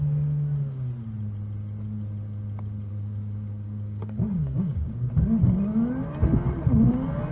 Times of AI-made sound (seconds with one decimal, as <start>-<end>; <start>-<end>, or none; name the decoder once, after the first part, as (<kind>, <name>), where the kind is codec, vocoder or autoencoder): 2.9-5.1 (codec, DAC)